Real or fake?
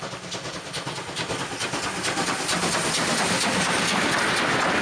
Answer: real